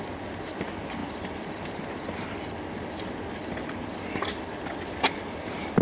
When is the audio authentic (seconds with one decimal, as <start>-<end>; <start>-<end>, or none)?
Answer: 0.0-5.8